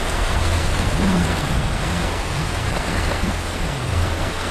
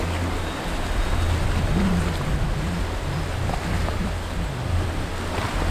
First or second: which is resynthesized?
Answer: first